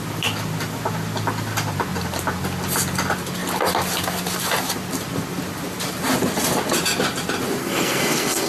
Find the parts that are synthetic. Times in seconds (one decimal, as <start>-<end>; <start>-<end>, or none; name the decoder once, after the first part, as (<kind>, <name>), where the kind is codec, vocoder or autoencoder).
7.6-8.5 (codec, SNAC)